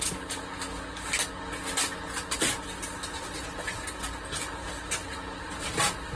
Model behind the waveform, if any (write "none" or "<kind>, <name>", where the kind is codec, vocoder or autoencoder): none